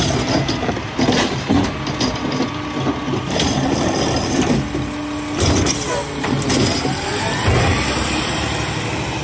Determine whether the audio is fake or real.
real